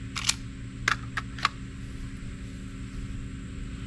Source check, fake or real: real